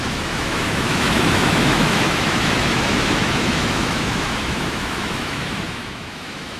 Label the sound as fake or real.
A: fake